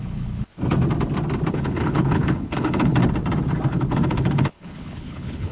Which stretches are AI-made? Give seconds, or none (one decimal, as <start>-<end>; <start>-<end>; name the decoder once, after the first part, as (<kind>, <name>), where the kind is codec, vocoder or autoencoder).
0.0-0.5 (codec, HILCodec); 1.5-3.0; 3.7-5.5